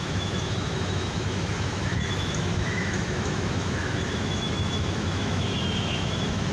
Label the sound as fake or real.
fake